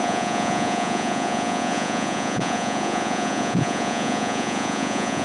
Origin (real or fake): fake